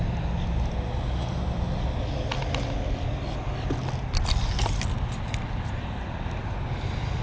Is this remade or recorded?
recorded